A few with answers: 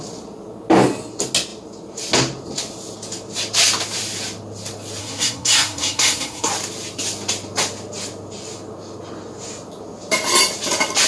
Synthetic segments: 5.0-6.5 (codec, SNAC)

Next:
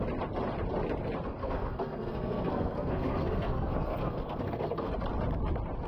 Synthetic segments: 1.4-4.9 (codec, SNAC)